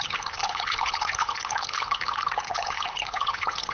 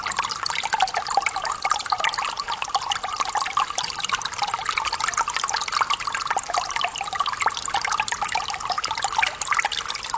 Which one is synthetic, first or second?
first